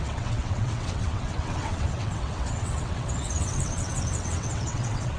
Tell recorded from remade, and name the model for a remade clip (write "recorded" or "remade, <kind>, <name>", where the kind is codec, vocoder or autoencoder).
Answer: remade, vocoder, WaveNeXt